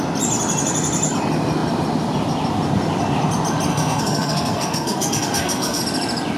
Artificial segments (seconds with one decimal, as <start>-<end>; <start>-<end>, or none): 3.7-5.8

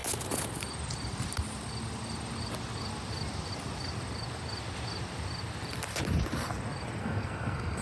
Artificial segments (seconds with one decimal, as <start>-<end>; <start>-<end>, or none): 7.0-7.8

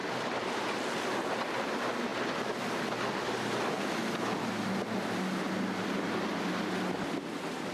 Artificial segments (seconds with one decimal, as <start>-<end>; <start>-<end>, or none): none